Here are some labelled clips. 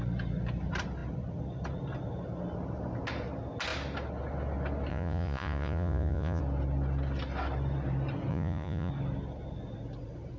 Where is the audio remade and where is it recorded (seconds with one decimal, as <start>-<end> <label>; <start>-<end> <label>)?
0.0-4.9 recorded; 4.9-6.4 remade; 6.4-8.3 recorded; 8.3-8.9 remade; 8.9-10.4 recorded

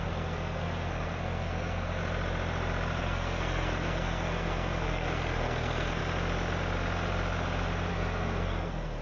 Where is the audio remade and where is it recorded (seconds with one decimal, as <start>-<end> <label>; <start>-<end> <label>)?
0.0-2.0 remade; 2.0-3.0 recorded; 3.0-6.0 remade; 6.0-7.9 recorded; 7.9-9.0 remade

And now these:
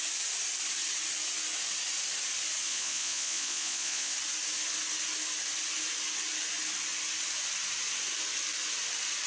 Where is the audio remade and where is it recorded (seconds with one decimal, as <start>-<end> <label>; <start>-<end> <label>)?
0.0-2.7 recorded; 2.7-4.1 remade; 4.1-9.3 recorded

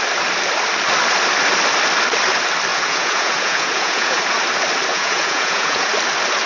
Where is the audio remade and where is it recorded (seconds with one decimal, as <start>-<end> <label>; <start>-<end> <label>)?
0.0-2.7 recorded; 2.7-4.2 remade; 4.2-4.9 recorded; 4.9-5.9 remade; 5.9-6.5 recorded